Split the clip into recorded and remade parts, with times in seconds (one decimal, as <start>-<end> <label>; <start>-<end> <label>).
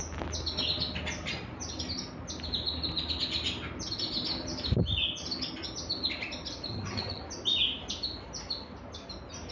0.0-6.7 recorded; 6.7-7.2 remade; 7.2-9.5 recorded